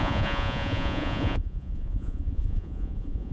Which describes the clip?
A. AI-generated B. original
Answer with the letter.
A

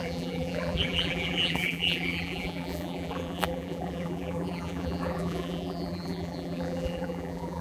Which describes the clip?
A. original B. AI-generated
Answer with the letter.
B